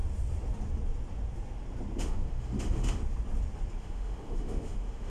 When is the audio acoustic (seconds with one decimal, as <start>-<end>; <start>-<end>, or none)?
0.0-2.0; 3.0-3.8